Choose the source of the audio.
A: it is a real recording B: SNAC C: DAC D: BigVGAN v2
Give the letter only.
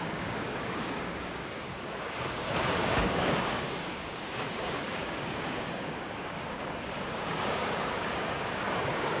C